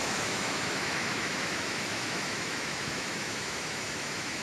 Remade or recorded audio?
remade